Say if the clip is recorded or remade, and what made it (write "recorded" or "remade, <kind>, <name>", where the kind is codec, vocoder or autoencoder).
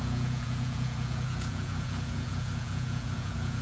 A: remade, vocoder, Vocos